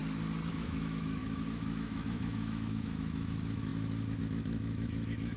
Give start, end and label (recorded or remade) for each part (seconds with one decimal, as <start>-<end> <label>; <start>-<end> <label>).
0.0-0.5 recorded; 0.5-5.4 remade